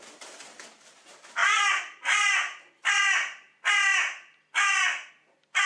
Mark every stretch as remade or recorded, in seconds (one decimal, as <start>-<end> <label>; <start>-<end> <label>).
0.0-5.7 recorded